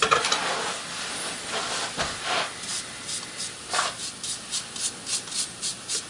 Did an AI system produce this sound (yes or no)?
no